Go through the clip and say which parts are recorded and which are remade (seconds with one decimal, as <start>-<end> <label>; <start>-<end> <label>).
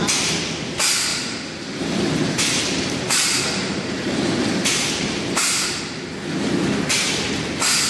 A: 0.0-1.1 recorded; 1.1-5.8 remade; 5.8-7.9 recorded